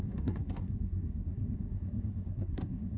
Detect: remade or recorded remade